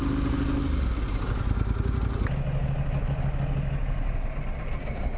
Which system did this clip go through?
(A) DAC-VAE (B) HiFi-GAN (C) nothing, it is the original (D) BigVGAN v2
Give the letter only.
C